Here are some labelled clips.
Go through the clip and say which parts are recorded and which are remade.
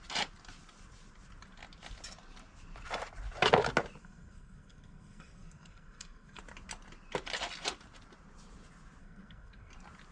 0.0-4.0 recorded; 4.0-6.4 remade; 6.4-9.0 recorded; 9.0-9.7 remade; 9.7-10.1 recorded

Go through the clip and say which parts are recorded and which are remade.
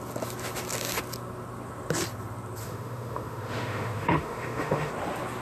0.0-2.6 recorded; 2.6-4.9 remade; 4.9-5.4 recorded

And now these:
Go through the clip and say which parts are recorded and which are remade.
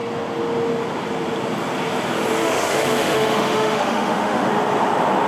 0.0-2.4 recorded; 2.4-4.5 remade; 4.5-5.3 recorded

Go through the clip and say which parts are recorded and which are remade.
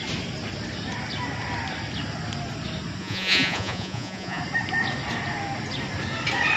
0.0-3.0 recorded; 3.0-4.4 remade; 4.4-6.6 recorded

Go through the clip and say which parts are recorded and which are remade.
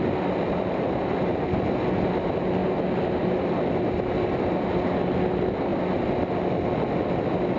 0.0-2.6 recorded; 2.6-3.6 remade; 3.6-7.6 recorded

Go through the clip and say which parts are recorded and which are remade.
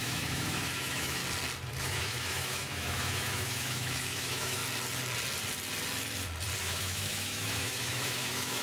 0.0-1.2 remade; 1.2-1.8 recorded; 1.8-4.6 remade; 4.6-6.6 recorded; 6.6-8.6 remade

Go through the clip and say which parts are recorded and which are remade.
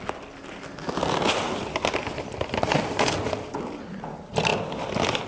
0.0-5.3 recorded